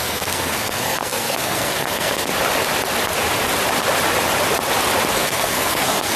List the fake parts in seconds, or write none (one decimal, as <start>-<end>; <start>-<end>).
0.0-2.3; 5.1-6.2